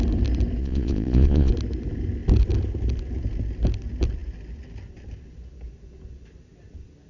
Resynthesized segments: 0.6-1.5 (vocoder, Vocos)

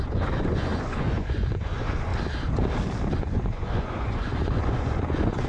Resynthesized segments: 0.0-2.1 (vocoder, Vocos); 3.1-5.5

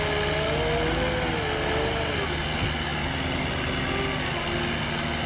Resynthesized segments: none

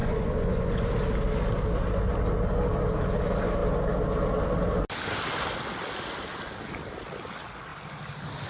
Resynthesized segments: 0.0-0.9 (vocoder, Vocos)

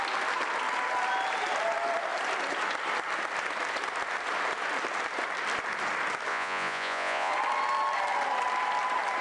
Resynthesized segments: 6.3-7.3 (vocoder, Vocos)

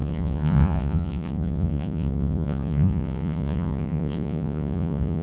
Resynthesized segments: 0.0-5.2 (vocoder, Vocos)

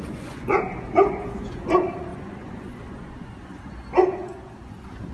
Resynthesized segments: 0.0-5.1 (vocoder, Vocos)